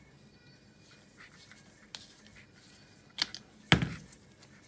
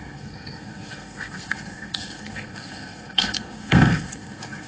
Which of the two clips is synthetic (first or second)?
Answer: second